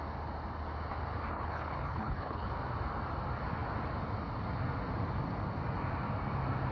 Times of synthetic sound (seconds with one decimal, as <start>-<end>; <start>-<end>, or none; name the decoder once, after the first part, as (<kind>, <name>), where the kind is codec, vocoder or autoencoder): 1.3-2.5 (codec, HILCodec)